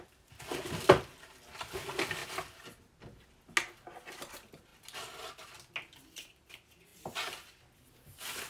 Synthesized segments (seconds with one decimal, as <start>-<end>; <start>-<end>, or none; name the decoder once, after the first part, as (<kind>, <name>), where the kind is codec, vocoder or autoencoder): none

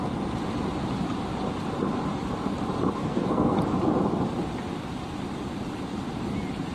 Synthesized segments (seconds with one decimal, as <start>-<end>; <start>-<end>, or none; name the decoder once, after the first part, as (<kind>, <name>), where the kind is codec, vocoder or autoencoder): 3.0-3.6 (codec, SNAC)

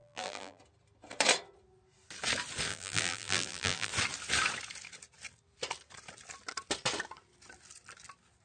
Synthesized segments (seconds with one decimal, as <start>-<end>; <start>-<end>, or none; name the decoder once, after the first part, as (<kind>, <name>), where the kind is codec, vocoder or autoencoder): 0.0-0.6 (vocoder, BigVGAN v2); 2.7-3.9